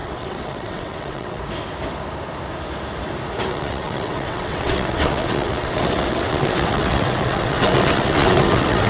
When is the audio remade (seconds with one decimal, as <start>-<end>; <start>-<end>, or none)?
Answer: 0.0-1.4; 3.5-8.9